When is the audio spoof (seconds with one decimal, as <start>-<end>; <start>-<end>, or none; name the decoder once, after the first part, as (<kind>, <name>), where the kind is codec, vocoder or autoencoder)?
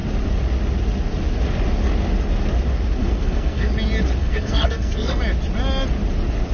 3.0-3.7 (codec, SNAC); 4.2-5.2